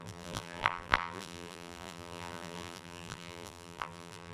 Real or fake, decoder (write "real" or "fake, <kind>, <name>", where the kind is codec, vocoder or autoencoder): fake, vocoder, BigVGAN v2